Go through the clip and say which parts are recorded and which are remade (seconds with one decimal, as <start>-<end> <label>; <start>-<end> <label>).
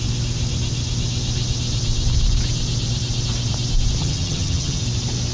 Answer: 0.0-4.0 recorded; 4.0-4.8 remade; 4.8-5.3 recorded